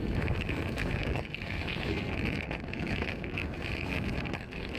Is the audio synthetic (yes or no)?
yes